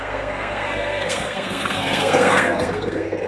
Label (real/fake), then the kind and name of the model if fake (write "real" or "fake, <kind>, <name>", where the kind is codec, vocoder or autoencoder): fake, codec, SNAC